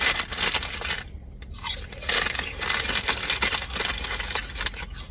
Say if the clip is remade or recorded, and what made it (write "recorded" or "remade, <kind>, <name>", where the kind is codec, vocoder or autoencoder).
recorded